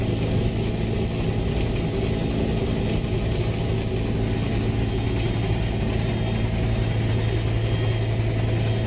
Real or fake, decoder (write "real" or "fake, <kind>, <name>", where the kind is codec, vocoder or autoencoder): real